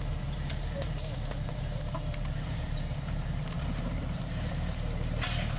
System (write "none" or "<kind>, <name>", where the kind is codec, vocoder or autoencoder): vocoder, BigVGAN v2